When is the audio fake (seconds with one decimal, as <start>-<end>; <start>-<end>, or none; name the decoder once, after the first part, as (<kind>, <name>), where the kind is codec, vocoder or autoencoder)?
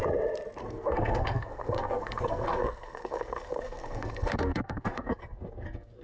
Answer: 0.6-6.0 (codec, SNAC)